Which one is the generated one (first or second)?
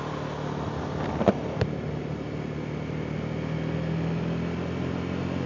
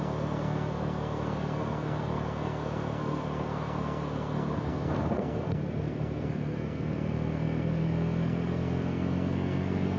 second